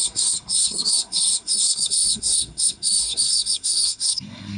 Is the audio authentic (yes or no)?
no